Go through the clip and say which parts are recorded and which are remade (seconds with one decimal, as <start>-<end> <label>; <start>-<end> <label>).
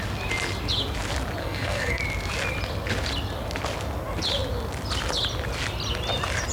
0.0-1.4 recorded; 1.4-2.0 remade; 2.0-6.5 recorded